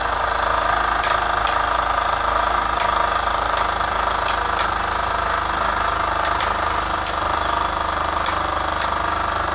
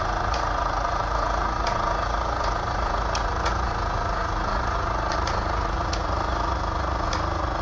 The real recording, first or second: first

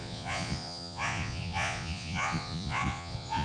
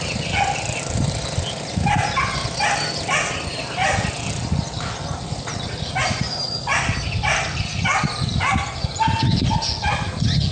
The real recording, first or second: second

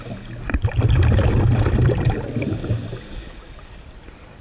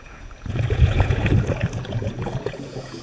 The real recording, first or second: first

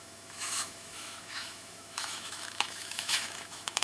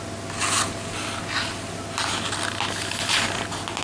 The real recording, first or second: second